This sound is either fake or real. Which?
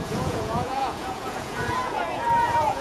fake